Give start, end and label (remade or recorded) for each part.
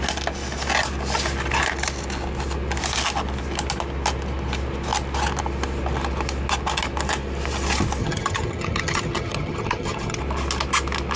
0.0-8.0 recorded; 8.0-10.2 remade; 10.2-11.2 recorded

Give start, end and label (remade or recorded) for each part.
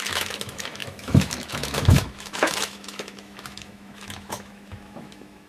0.0-5.5 remade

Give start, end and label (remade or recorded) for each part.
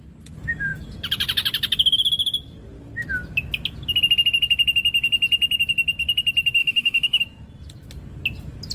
0.0-6.6 recorded; 6.6-7.2 remade; 7.2-8.7 recorded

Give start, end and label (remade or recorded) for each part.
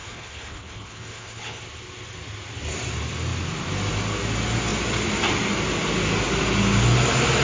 0.0-1.6 remade; 1.6-7.4 recorded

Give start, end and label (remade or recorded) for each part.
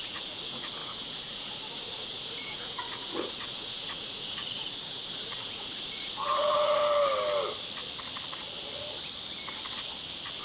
0.0-6.8 remade; 6.8-10.4 recorded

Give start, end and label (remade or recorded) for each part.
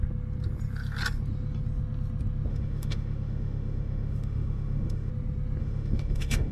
0.0-2.5 recorded; 2.5-5.1 remade; 5.1-5.6 recorded; 5.6-6.5 remade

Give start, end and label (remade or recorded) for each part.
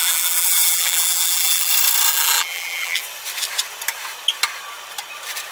0.0-1.7 remade; 1.7-2.1 recorded; 2.1-3.0 remade; 3.0-5.5 recorded